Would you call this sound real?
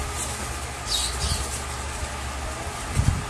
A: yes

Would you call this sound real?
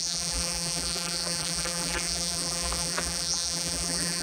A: no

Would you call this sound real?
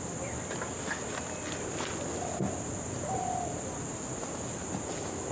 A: yes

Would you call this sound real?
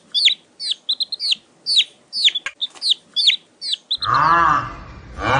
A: yes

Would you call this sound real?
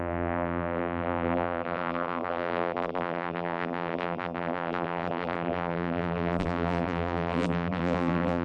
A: no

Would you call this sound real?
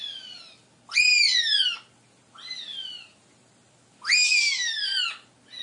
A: yes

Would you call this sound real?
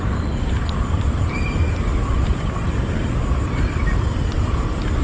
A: no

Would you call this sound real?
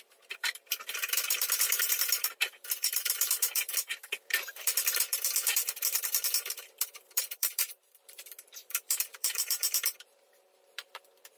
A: no